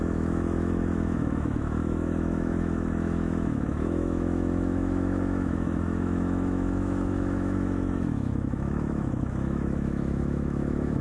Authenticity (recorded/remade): remade